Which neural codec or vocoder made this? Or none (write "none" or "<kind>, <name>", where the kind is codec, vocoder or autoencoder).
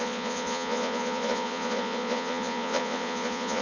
vocoder, Vocos